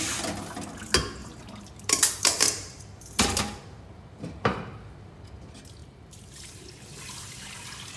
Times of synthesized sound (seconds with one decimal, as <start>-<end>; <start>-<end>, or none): 1.2-5.1; 5.8-6.8